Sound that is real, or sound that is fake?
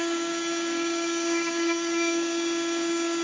fake